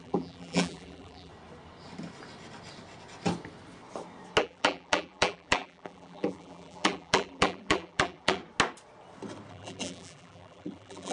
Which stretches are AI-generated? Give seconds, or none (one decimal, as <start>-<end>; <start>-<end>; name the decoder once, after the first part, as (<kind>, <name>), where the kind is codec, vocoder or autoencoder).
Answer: 0.0-1.3 (vocoder, BigVGAN v2); 4.4-8.4; 9.5-11.1

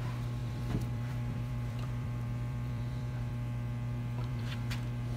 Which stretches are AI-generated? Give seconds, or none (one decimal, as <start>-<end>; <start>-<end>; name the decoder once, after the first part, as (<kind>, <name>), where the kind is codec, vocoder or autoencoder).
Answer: 0.4-3.3 (vocoder, BigVGAN v2); 4.2-4.7

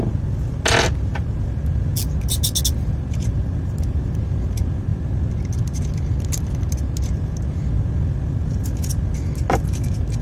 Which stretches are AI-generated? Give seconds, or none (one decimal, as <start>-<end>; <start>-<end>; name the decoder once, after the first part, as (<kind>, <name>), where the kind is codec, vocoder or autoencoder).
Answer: none

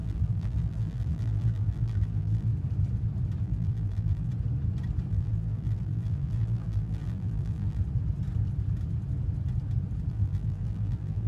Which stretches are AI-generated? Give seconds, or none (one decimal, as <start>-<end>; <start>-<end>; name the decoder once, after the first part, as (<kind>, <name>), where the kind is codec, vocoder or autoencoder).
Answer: 0.0-2.5 (vocoder, BigVGAN v2); 3.4-4.3; 5.1-7.8; 10.1-11.3